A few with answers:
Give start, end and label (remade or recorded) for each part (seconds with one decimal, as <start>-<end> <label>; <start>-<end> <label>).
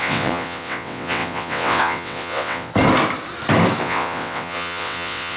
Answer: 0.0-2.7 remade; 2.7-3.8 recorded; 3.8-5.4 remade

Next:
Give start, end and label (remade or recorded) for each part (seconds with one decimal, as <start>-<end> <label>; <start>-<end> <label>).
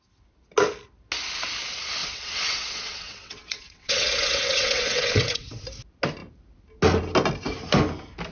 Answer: 0.0-2.0 recorded; 2.0-5.6 remade; 5.6-8.3 recorded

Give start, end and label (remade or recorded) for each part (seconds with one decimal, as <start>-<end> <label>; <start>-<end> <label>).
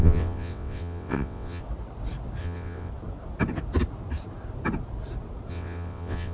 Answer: 0.0-1.6 remade; 1.6-2.4 recorded; 2.4-2.9 remade; 2.9-5.5 recorded; 5.5-6.3 remade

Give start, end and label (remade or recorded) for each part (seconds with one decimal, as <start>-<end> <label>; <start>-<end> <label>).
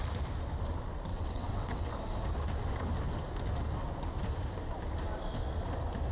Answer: 0.0-1.1 recorded; 1.1-1.9 remade; 1.9-6.1 recorded